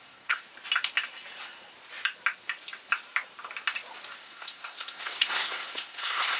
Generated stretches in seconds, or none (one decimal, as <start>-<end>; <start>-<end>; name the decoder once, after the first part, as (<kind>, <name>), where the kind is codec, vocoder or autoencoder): 0.0-0.4 (codec, SNAC); 4.2-6.4